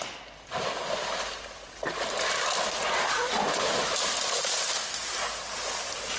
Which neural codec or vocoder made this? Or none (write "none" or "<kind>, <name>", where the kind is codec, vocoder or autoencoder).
none